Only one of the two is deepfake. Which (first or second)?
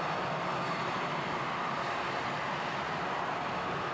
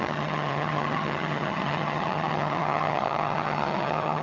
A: second